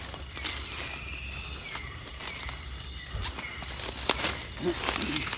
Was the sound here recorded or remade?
recorded